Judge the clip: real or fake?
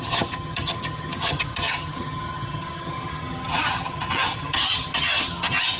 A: fake